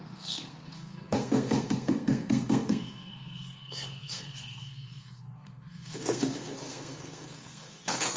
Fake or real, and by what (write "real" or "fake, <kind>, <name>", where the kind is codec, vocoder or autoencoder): fake, codec, SNAC